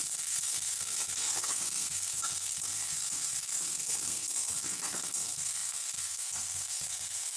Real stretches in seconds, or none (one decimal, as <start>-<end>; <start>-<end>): none